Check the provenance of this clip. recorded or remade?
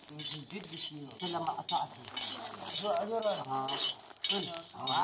recorded